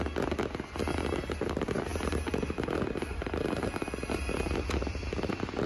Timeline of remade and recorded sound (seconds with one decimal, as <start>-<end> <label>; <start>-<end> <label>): 0.0-5.7 recorded

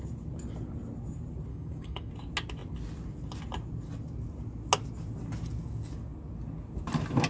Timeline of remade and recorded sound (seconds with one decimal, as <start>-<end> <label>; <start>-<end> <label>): 0.0-1.5 recorded; 1.5-2.1 remade; 2.1-7.3 recorded

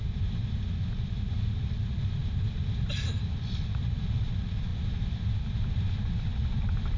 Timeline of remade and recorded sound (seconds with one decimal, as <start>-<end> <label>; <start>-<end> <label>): 0.0-7.0 recorded